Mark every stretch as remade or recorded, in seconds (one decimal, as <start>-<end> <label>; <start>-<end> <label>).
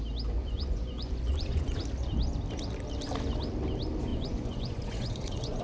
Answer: 0.0-0.4 recorded; 0.4-1.8 remade; 1.8-4.1 recorded; 4.1-5.6 remade